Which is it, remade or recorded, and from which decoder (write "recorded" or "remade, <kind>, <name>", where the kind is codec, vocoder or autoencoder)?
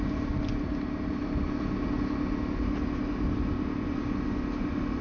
recorded